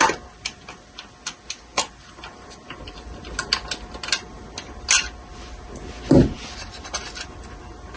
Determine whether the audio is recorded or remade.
recorded